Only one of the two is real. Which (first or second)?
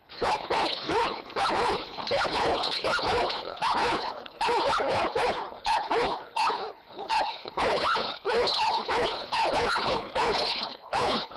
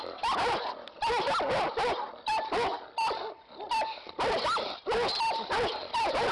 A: second